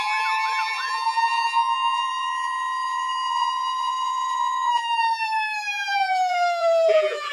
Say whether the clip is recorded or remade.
remade